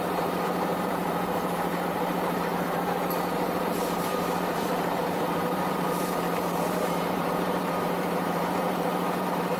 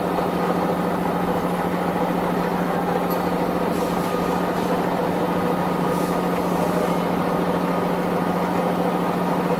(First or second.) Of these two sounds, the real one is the second